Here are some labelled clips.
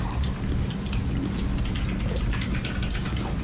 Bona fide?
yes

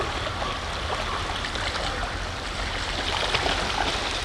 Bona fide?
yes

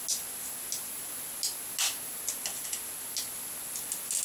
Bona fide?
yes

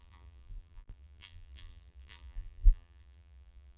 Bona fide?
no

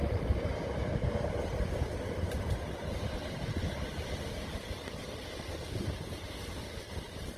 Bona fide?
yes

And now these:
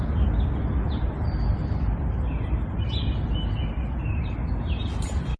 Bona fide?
yes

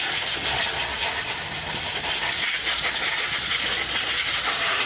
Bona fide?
no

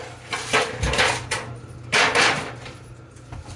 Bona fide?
yes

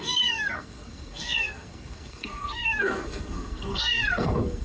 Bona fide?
no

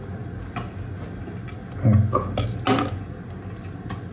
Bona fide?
yes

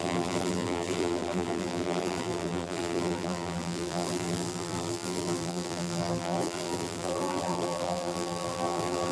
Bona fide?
no